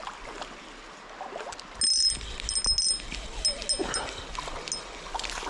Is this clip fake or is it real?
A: real